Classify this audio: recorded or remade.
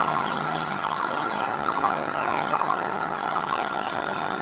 remade